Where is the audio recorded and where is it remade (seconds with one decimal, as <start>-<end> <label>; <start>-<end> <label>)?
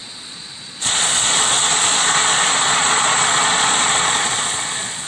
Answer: 0.0-5.1 remade